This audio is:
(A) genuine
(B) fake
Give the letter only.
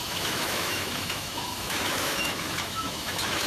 B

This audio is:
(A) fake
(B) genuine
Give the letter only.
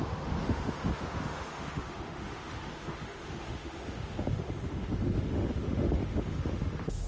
A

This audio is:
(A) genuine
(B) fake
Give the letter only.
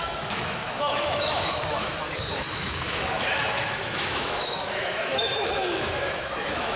B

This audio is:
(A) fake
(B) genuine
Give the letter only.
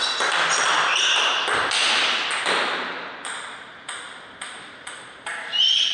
B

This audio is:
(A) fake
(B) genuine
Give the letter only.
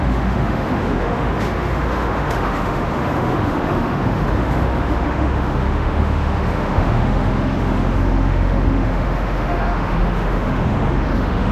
A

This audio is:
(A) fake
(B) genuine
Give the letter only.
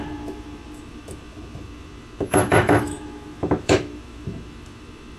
A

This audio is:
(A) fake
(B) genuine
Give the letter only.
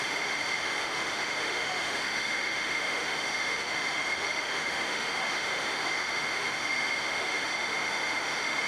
A